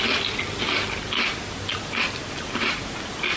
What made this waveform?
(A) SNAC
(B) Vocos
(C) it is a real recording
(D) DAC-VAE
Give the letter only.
C